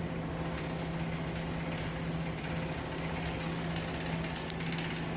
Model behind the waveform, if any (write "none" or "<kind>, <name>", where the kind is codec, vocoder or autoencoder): none